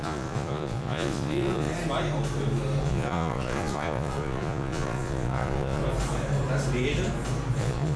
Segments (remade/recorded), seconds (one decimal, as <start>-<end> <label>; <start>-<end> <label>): 0.0-1.7 remade; 1.7-2.8 recorded; 2.8-5.8 remade; 5.8-7.6 recorded; 7.6-8.0 remade